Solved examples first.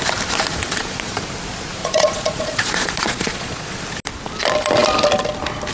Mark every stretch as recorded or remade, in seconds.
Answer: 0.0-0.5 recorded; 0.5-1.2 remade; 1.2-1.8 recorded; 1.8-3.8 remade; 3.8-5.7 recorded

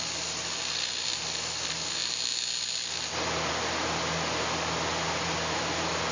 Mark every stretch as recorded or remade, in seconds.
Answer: 0.0-6.1 recorded

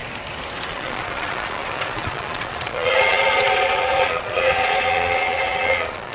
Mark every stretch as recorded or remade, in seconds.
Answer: 0.0-0.7 recorded; 0.7-6.1 remade

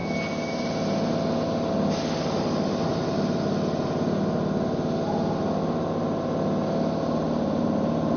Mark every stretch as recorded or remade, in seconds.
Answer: 0.0-8.2 recorded

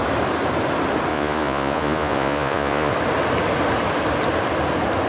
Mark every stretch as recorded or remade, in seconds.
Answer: 0.0-1.1 recorded; 1.1-2.9 remade; 2.9-5.1 recorded

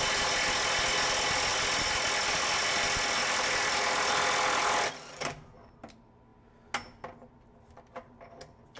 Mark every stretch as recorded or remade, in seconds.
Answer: 0.0-8.8 recorded